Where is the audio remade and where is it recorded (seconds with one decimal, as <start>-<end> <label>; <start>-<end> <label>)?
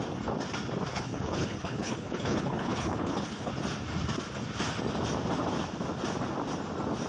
0.0-0.9 recorded; 0.9-3.5 remade; 3.5-7.1 recorded